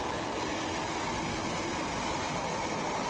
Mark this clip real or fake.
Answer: real